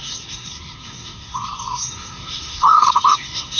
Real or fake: fake